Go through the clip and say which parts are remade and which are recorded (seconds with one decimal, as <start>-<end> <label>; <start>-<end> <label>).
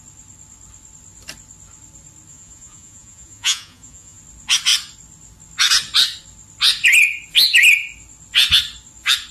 0.0-2.3 recorded; 2.3-4.2 remade; 4.2-9.3 recorded